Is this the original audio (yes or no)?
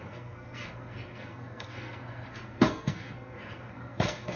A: no